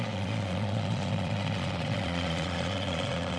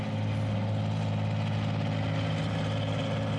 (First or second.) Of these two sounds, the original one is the second